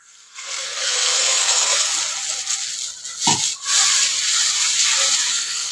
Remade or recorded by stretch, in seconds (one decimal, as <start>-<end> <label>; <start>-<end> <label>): 0.0-1.9 remade; 1.9-5.3 recorded; 5.3-5.7 remade